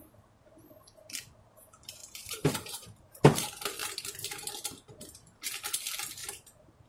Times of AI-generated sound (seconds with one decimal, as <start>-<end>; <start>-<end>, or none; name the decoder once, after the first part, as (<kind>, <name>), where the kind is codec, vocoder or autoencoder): 2.0-3.2 (vocoder, BigVGAN v2); 3.8-4.5; 6.2-6.9